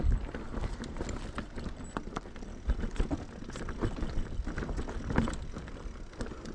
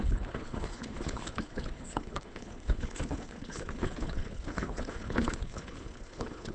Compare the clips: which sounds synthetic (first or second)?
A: second